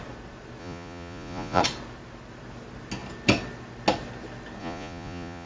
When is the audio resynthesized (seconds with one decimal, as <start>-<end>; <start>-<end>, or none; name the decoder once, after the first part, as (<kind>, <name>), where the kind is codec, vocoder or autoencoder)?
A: 0.6-1.6 (vocoder, Vocos); 4.6-5.5